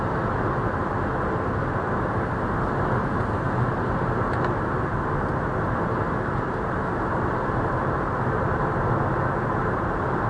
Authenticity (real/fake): real